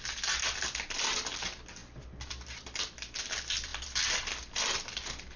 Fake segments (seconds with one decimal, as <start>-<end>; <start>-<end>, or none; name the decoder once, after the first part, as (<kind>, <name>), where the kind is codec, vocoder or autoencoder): none